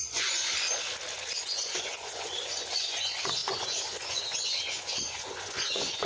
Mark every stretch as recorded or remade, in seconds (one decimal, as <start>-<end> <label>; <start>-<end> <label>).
0.0-0.5 remade; 0.5-1.4 recorded; 1.4-6.0 remade

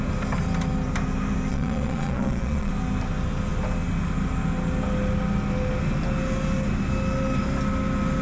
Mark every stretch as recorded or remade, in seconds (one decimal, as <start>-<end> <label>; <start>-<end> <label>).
0.0-1.5 recorded; 1.5-2.7 remade; 2.7-8.2 recorded

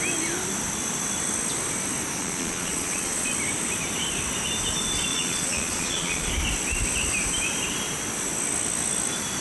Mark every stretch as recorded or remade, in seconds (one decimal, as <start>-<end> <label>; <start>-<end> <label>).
0.0-2.2 recorded; 2.2-3.3 remade; 3.3-5.1 recorded; 5.1-6.3 remade; 6.3-9.4 recorded

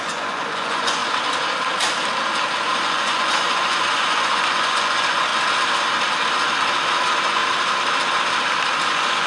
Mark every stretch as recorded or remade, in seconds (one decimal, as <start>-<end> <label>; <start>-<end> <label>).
0.0-1.0 remade; 1.0-2.6 recorded; 2.6-5.3 remade; 5.3-7.0 recorded; 7.0-7.4 remade; 7.4-8.9 recorded; 8.9-9.3 remade